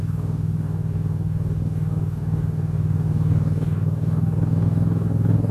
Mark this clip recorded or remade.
remade